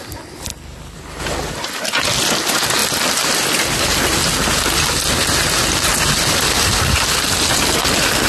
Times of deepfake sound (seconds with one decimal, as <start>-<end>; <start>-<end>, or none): none